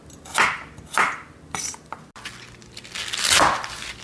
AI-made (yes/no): no